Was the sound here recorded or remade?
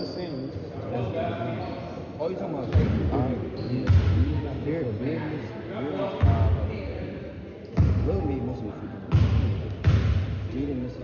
recorded